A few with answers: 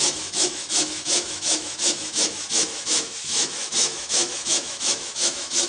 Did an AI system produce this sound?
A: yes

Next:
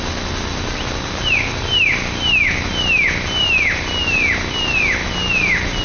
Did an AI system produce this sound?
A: no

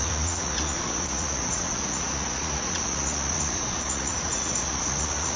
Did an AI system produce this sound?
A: yes